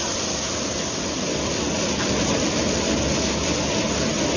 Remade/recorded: recorded